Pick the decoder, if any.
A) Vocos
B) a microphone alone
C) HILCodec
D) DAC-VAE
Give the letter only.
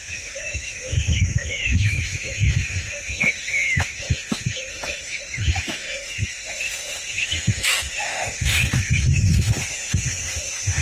D